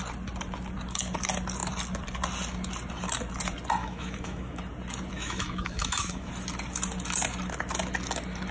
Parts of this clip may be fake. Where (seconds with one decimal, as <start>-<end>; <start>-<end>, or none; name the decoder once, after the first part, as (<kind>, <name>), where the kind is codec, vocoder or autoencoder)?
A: 3.8-4.6 (autoencoder, DAC-VAE); 5.1-6.3